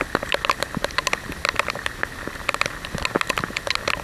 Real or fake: real